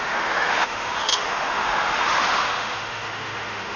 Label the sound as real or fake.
fake